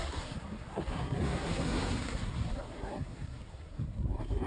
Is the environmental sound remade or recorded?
remade